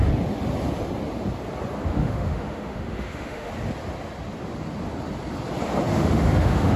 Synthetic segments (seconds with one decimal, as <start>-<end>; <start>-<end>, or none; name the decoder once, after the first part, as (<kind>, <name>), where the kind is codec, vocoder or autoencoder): 1.9-3.5 (autoencoder, DAC-VAE); 5.9-6.8